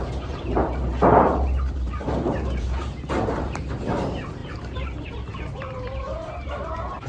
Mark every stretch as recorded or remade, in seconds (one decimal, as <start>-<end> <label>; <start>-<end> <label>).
0.0-7.1 remade